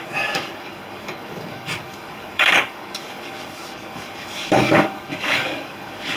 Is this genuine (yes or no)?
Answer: no